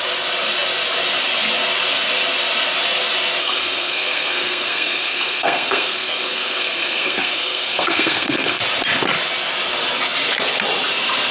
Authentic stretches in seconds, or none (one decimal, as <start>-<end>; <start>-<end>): 0.0-3.4; 8.6-11.3